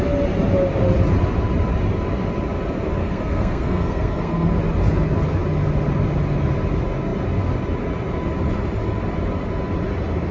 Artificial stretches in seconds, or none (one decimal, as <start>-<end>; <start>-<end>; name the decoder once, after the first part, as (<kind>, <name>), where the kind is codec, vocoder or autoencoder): 3.0-4.5 (codec, SNAC)